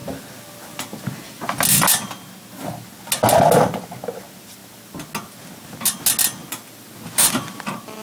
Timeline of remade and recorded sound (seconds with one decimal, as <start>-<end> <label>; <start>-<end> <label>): 0.0-6.4 recorded; 6.4-7.3 remade; 7.3-8.0 recorded